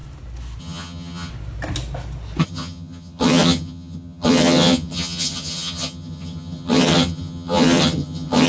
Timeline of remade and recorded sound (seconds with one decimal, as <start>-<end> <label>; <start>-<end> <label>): 0.0-0.6 recorded; 0.6-1.3 remade; 1.3-2.4 recorded; 2.4-8.5 remade